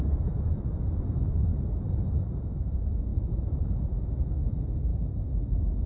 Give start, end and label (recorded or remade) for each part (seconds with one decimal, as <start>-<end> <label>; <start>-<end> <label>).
0.0-1.5 recorded; 1.5-2.4 remade; 2.4-3.1 recorded; 3.1-4.2 remade; 4.2-5.9 recorded